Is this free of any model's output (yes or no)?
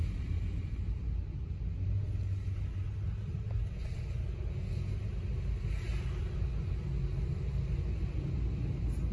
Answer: yes